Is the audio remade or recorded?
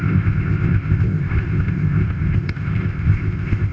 remade